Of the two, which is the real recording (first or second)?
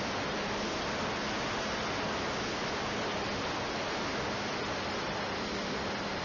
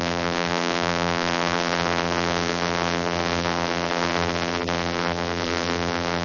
first